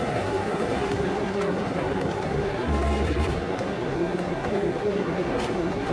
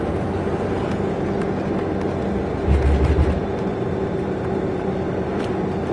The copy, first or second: first